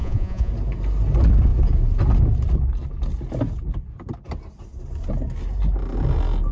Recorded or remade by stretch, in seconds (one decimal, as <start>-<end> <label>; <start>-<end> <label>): 0.0-0.5 remade; 0.5-6.5 recorded